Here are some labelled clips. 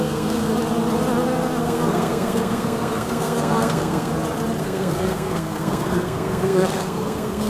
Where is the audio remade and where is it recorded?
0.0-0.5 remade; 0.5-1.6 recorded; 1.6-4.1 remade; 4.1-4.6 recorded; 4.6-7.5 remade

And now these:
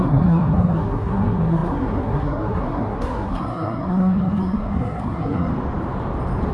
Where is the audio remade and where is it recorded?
0.0-5.5 remade; 5.5-6.5 recorded

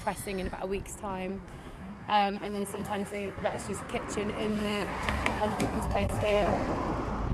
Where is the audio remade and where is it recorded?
0.0-1.3 recorded; 1.3-3.9 remade; 3.9-4.5 recorded; 4.5-6.5 remade; 6.5-7.3 recorded